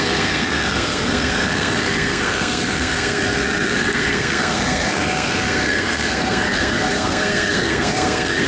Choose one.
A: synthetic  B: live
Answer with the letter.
A